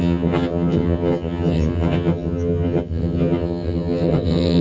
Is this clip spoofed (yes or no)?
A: yes